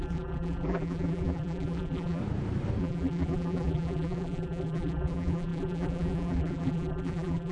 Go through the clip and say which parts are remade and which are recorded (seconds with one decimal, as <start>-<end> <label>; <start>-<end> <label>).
0.0-2.2 remade; 2.2-2.8 recorded; 2.8-7.5 remade